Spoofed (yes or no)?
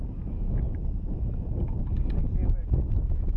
no